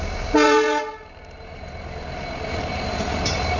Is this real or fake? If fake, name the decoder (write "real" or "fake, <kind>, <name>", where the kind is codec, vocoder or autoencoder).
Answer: real